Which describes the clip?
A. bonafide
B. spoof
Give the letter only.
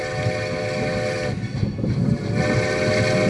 A